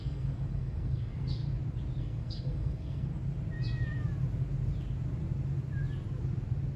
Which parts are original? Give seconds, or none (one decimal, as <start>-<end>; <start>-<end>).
1.4-2.0; 3.1-6.8